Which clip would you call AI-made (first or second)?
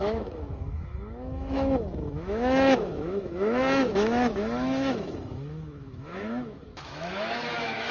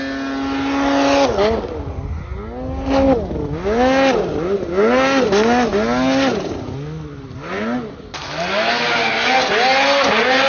first